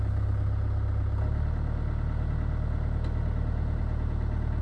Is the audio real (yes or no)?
yes